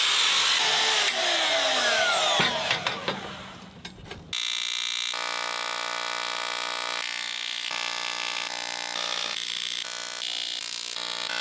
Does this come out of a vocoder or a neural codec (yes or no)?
no